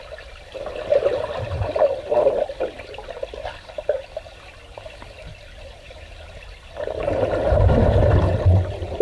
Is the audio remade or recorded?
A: remade